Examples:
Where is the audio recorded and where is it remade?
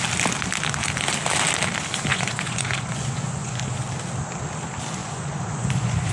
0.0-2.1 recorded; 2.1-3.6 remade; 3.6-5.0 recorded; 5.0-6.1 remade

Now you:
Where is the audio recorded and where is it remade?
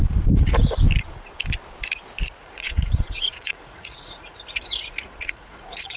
0.0-2.4 recorded; 2.4-6.0 remade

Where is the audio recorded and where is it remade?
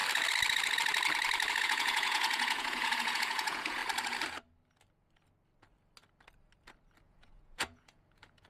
0.0-1.6 recorded; 1.6-3.8 remade; 3.8-7.0 recorded; 7.0-8.5 remade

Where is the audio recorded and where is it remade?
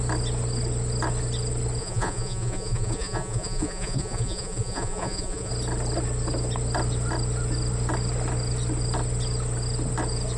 0.0-1.8 recorded; 1.8-5.5 remade; 5.5-10.4 recorded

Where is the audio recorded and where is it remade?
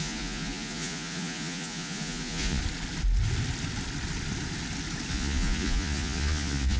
0.0-2.6 remade; 2.6-5.1 recorded; 5.1-6.8 remade